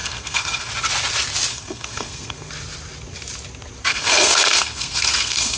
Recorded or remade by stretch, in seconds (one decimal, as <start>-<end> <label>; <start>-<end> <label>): 0.0-0.7 remade; 0.7-1.5 recorded; 1.5-2.5 remade; 2.5-3.9 recorded; 3.9-5.6 remade